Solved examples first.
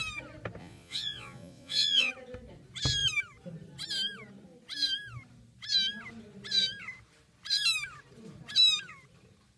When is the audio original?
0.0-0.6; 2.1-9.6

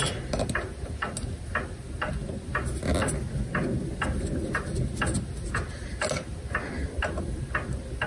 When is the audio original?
0.0-6.8; 7.4-8.1

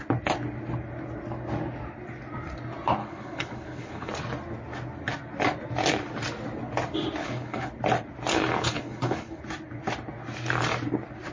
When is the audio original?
0.0-3.0; 4.1-7.2; 7.7-8.3; 9.4-11.3

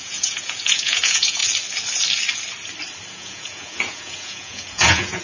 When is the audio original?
1.4-3.1

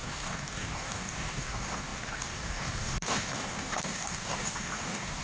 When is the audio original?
none